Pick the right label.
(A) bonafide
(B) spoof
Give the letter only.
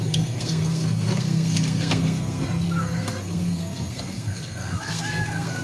B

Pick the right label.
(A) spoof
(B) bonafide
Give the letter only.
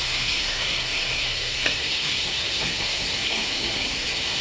A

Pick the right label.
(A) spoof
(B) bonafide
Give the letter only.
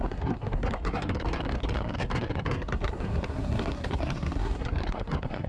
A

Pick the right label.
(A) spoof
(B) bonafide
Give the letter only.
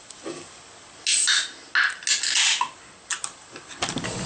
B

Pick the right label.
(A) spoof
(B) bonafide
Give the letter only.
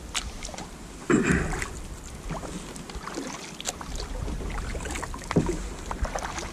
B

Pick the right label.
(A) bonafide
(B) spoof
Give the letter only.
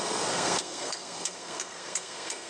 B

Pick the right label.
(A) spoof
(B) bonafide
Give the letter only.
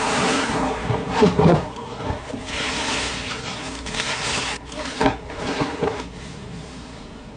A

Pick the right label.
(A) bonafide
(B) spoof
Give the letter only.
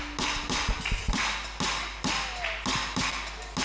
A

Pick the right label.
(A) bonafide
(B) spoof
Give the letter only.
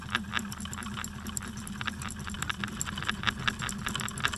A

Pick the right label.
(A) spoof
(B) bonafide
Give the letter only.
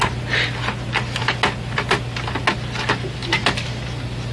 B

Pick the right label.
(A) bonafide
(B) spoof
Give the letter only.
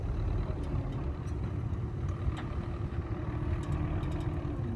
A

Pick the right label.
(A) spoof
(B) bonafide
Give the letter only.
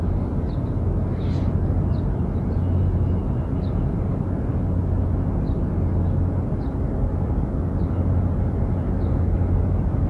B